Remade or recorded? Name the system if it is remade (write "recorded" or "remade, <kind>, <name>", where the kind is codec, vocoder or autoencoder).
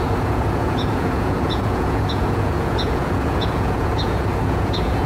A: remade, vocoder, Vocos